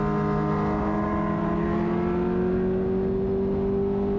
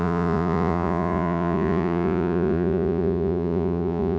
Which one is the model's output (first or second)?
second